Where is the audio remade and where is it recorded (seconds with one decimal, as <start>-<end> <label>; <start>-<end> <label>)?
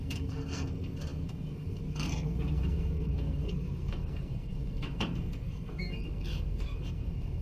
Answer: 0.0-7.4 remade